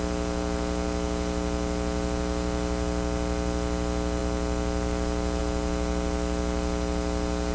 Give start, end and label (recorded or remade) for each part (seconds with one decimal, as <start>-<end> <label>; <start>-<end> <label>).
0.0-7.5 recorded